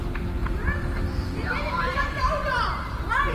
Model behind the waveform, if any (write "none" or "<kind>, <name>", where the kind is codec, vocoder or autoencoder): vocoder, BigVGAN v2